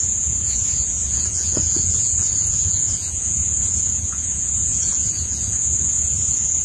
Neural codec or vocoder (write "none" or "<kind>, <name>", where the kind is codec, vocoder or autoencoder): vocoder, Vocos